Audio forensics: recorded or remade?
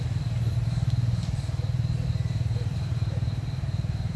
remade